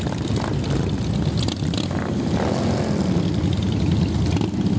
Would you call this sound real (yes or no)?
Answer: yes